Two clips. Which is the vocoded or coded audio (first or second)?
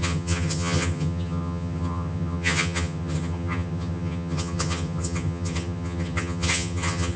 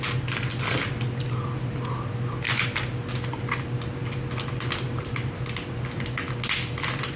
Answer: first